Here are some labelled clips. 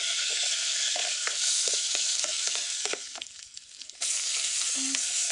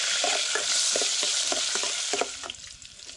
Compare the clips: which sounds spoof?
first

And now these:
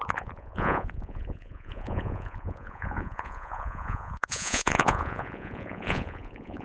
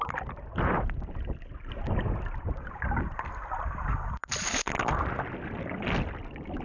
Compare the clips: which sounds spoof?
first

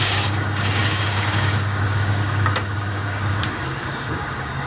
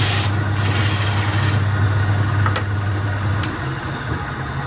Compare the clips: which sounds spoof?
first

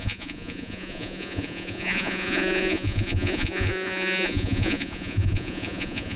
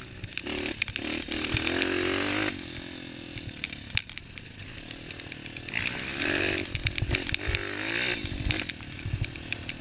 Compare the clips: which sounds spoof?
first